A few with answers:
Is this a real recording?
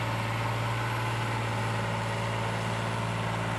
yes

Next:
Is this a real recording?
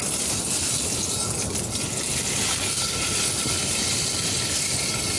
yes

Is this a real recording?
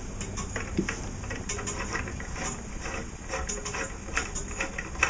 yes